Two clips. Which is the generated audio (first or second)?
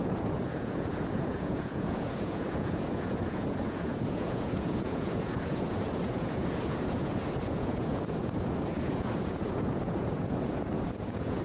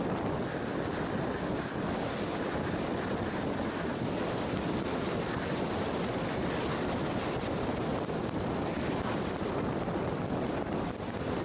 first